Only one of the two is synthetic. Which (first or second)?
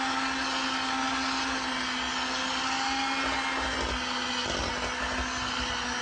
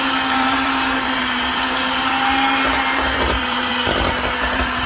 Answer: second